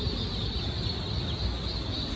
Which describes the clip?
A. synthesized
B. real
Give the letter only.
B